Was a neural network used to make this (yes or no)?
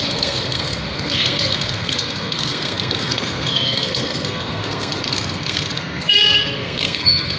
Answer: yes